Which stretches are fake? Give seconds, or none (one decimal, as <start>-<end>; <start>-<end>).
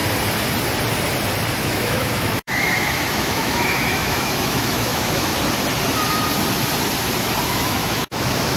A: 1.6-5.3; 7.4-8.6